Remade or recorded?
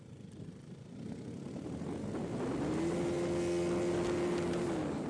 recorded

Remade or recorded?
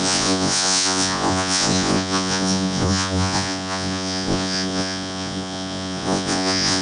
remade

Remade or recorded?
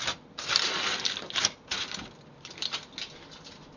recorded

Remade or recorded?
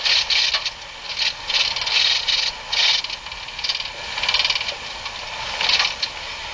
recorded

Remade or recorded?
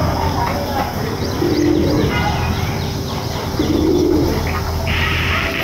recorded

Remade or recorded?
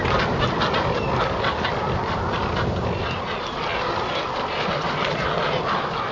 recorded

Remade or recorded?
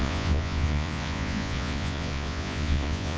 remade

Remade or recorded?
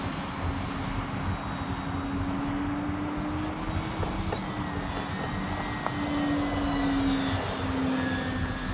recorded